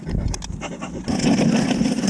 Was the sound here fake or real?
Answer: real